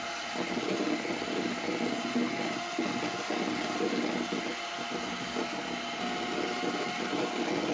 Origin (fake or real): real